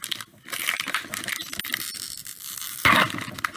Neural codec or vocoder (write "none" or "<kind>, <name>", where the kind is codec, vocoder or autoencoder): none